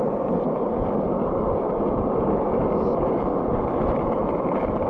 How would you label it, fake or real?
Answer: real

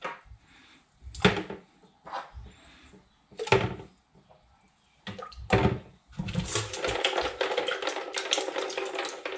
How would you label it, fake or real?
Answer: real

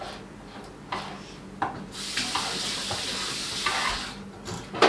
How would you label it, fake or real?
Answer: real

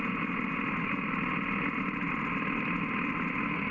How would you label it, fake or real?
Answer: real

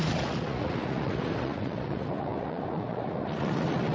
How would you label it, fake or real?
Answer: fake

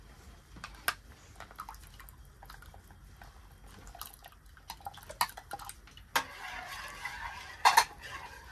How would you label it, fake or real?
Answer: real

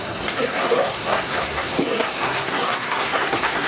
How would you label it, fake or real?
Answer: fake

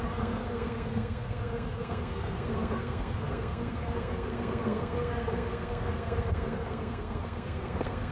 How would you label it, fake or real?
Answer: fake